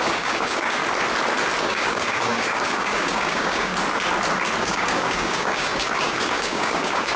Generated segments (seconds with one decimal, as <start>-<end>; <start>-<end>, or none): 0.0-0.8; 1.6-3.7; 4.6-7.2